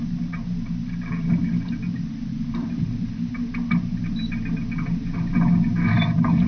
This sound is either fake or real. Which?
real